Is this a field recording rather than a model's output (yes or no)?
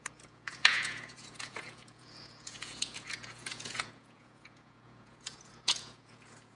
no